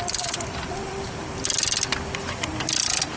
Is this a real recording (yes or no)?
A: no